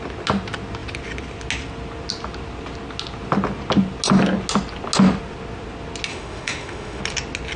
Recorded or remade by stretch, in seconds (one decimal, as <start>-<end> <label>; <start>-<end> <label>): 0.0-6.1 recorded; 6.1-7.0 remade; 7.0-7.6 recorded